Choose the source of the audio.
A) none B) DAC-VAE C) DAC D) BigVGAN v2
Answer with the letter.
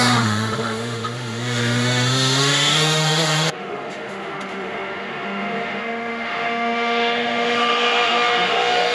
B